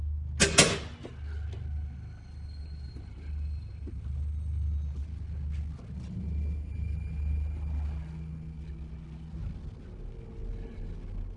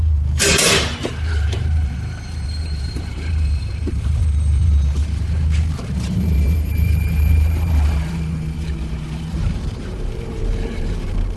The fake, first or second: second